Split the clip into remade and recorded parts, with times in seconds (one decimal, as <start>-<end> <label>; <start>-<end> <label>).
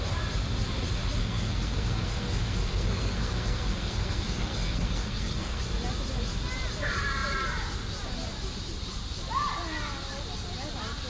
0.0-1.2 recorded; 1.2-5.6 remade; 5.6-11.1 recorded